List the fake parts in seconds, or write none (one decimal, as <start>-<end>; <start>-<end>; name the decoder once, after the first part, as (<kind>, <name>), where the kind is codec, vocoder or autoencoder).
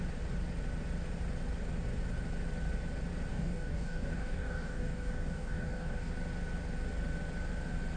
3.3-6.1 (codec, DAC)